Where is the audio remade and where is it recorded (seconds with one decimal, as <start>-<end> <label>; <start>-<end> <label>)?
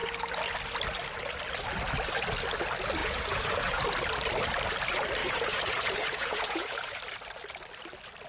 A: 0.0-3.0 recorded; 3.0-3.8 remade; 3.8-5.2 recorded; 5.2-7.0 remade; 7.0-8.3 recorded